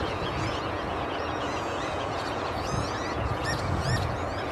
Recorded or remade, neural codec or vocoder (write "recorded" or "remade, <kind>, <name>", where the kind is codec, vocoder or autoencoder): remade, vocoder, Vocos